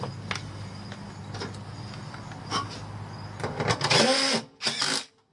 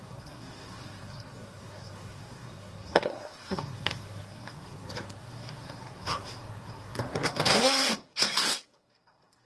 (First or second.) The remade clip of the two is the second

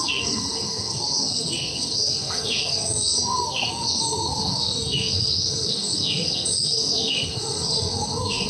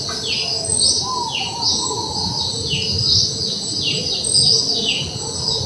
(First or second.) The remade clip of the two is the first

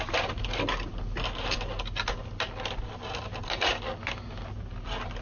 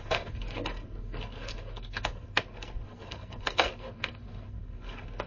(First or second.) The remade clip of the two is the second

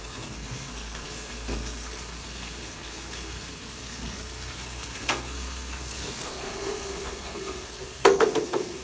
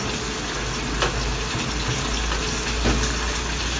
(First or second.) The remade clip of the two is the first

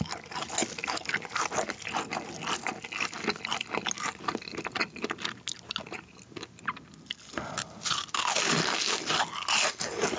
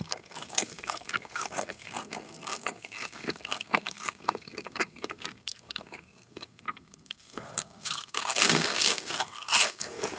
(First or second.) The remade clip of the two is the second